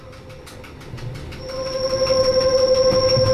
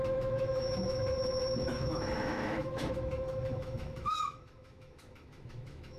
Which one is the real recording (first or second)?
first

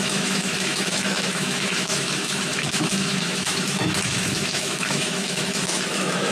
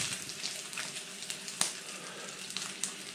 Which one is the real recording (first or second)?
second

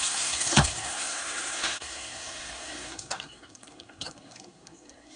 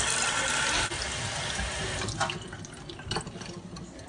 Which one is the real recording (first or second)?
second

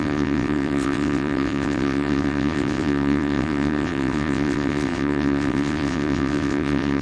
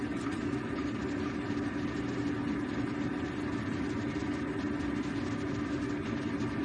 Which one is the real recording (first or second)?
second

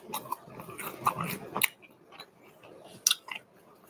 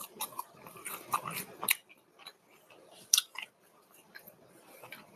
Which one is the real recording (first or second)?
first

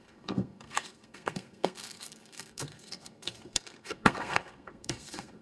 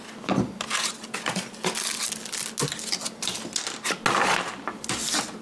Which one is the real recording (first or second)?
second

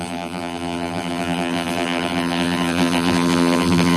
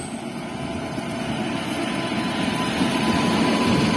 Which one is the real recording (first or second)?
second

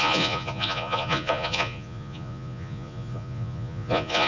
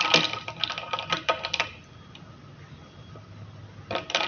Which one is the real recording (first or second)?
second